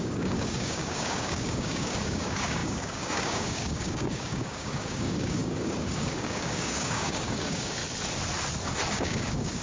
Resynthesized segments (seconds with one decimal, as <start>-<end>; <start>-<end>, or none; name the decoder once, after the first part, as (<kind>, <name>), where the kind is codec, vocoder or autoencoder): 0.0-7.8 (codec, DAC); 8.9-9.6